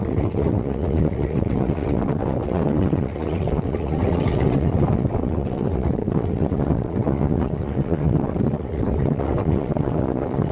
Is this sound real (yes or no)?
no